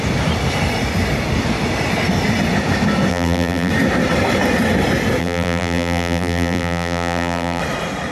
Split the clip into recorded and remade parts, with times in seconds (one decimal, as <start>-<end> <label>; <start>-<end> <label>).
0.0-3.1 recorded; 3.1-3.7 remade; 3.7-5.2 recorded; 5.2-7.6 remade; 7.6-8.1 recorded